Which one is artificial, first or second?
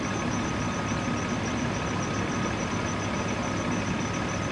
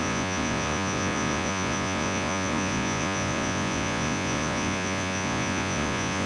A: second